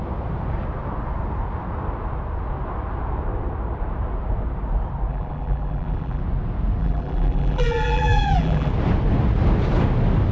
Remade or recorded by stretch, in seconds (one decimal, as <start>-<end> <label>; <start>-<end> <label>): 0.0-5.1 recorded; 5.1-6.2 remade; 6.2-6.8 recorded; 6.8-8.7 remade; 8.7-10.3 recorded